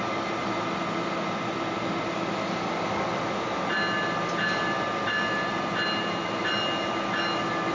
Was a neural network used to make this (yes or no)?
no